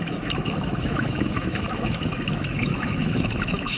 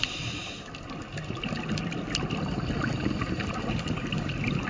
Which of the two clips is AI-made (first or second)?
first